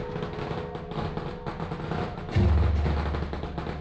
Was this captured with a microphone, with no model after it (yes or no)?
yes